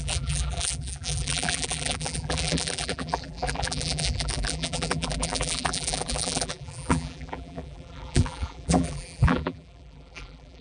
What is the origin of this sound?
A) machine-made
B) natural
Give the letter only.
A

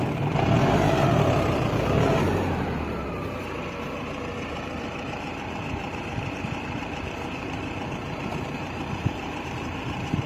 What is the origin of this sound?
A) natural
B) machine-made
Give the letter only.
B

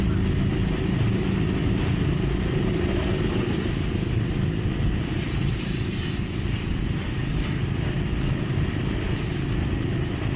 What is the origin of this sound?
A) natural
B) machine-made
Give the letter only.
A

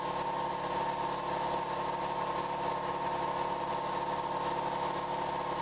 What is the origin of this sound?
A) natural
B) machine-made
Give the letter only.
A